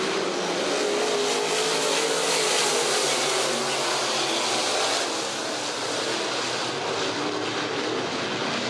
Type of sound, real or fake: real